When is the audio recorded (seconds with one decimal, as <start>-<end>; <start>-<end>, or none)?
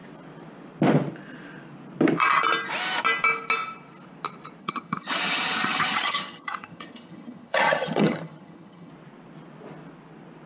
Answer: 0.0-4.6; 8.9-10.5